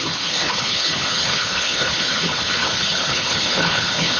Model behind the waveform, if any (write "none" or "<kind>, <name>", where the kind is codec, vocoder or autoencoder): codec, HILCodec